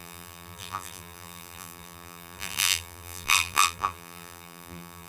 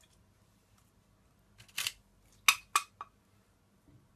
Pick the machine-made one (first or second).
first